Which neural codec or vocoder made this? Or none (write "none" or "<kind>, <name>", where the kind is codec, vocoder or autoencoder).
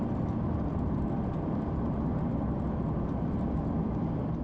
none